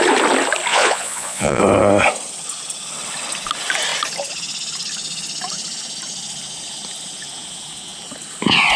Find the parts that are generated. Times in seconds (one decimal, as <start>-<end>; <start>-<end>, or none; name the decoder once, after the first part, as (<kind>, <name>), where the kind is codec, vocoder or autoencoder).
0.7-1.6 (vocoder, Vocos)